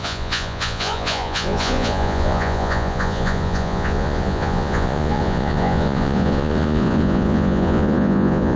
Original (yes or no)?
no